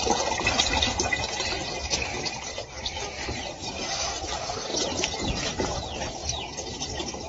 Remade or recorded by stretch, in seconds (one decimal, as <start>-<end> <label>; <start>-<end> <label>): 0.0-4.7 recorded; 4.7-5.3 remade; 5.3-7.3 recorded